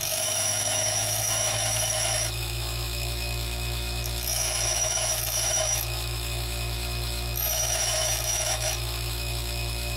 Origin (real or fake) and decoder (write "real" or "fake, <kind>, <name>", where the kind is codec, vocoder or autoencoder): fake, autoencoder, DAC-VAE